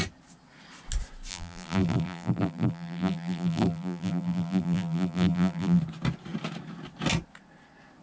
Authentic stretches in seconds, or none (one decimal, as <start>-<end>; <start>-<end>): 0.0-1.3; 5.8-8.0